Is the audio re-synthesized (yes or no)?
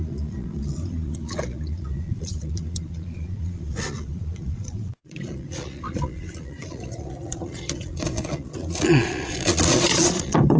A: yes